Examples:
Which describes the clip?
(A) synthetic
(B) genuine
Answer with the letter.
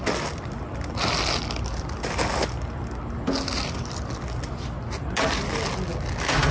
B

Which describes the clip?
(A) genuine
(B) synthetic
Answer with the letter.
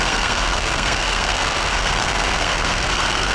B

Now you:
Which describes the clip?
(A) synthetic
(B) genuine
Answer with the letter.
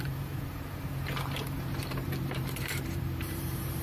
A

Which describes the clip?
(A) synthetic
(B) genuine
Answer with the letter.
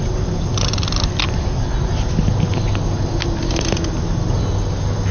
B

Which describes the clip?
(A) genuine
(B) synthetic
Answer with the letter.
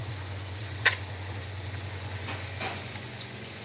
B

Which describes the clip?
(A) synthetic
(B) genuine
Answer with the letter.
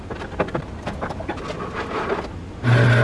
B